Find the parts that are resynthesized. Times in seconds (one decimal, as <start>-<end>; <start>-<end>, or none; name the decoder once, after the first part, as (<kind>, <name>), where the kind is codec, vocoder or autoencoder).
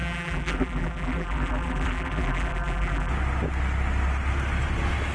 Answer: 0.0-3.1 (vocoder, BigVGAN v2)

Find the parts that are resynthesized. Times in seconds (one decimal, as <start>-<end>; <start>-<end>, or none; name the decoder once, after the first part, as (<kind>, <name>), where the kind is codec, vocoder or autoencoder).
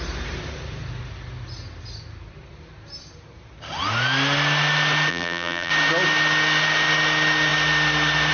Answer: 5.1-5.7 (vocoder, BigVGAN v2)